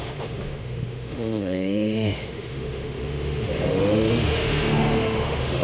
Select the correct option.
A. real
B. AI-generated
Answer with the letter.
B